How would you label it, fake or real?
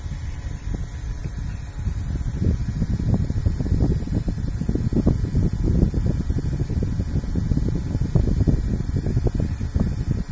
real